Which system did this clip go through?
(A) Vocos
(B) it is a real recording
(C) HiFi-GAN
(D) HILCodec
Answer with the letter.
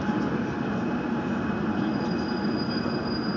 B